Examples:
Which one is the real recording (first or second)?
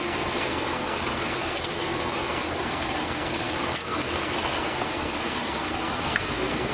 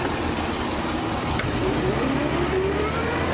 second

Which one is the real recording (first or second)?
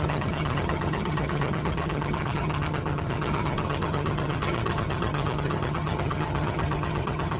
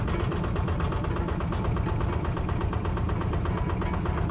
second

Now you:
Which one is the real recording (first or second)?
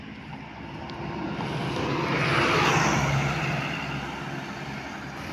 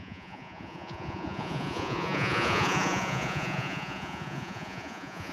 first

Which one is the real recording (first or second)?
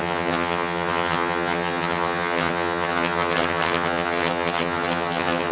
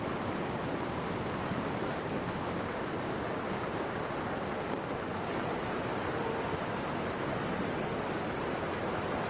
second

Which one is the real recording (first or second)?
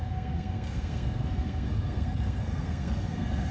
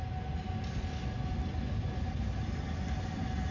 second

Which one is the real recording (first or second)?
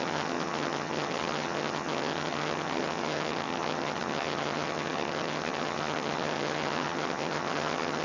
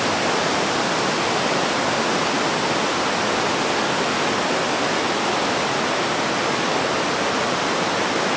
second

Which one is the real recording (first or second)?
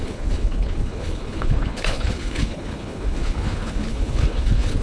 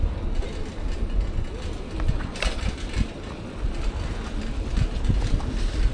second